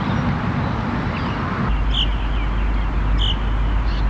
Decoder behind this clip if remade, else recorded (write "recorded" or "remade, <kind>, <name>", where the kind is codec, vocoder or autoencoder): recorded